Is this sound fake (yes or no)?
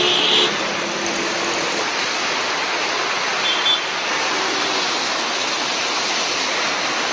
no